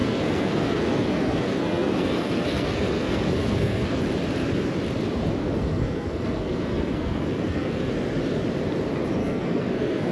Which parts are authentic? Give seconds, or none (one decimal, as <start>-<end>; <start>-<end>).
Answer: 4.0-5.4; 7.9-9.2